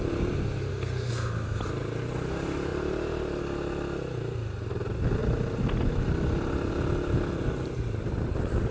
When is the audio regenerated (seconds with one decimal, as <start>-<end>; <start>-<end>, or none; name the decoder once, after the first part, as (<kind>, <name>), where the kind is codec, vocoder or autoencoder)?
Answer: 0.7-1.6 (codec, SNAC)